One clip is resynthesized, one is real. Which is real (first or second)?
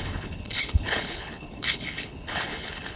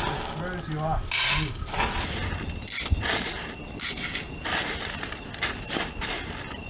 second